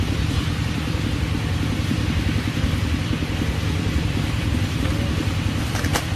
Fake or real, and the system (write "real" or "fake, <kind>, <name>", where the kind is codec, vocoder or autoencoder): fake, vocoder, BigVGAN v2